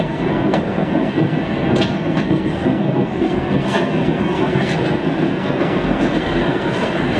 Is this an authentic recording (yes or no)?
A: no